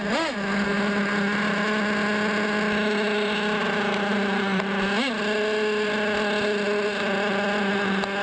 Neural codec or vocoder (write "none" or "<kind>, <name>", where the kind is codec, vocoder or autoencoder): none